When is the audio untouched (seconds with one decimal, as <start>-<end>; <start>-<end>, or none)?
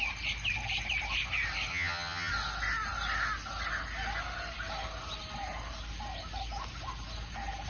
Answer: 0.0-1.7; 2.3-7.7